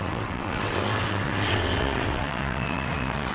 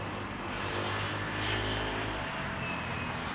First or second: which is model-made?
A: first